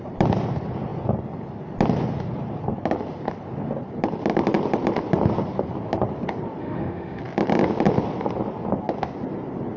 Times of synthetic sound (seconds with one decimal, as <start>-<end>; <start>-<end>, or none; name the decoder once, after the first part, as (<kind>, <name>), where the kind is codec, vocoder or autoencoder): 6.6-7.2 (autoencoder, DAC-VAE)